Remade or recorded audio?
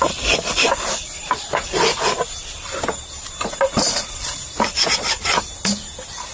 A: recorded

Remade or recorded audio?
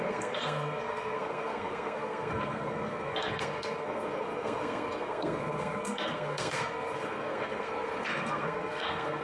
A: remade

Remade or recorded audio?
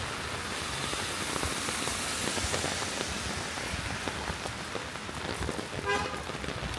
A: recorded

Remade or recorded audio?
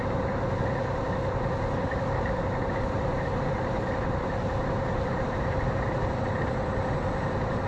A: recorded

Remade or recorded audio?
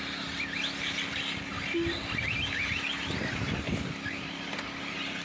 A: recorded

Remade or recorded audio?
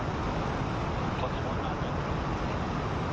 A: recorded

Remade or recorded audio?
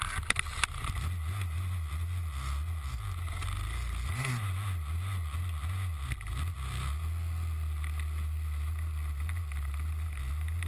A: recorded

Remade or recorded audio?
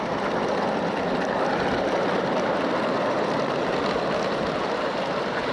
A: recorded